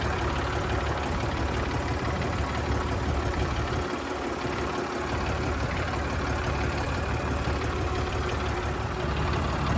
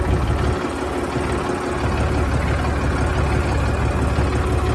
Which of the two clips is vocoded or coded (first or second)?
first